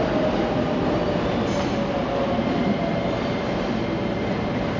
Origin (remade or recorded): recorded